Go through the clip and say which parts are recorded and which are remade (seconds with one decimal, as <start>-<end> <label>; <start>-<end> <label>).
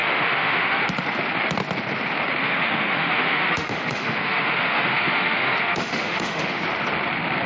0.0-0.8 remade; 0.8-2.4 recorded; 2.4-6.6 remade; 6.6-7.5 recorded